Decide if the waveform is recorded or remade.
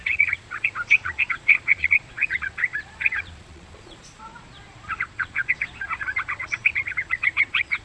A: remade